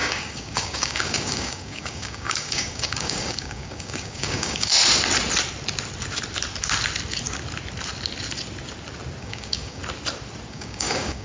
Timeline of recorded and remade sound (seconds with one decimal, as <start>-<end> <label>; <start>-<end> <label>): 0.0-4.7 remade; 4.7-9.2 recorded; 9.2-9.8 remade; 9.8-10.5 recorded; 10.5-11.2 remade